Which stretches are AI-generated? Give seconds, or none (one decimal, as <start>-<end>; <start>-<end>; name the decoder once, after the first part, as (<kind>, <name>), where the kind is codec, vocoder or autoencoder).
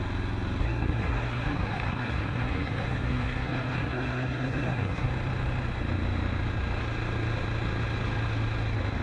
0.6-5.1 (codec, SNAC)